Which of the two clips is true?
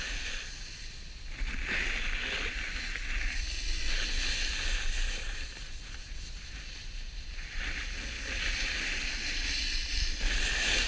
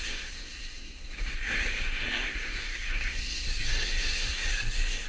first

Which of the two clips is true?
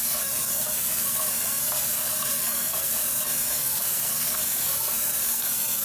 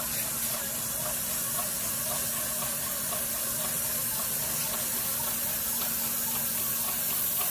second